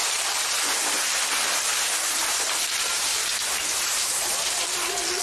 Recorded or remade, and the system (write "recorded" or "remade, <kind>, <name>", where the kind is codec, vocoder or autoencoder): recorded